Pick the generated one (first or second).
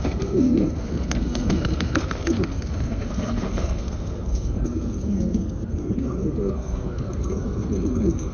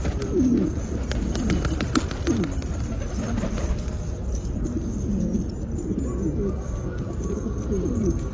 first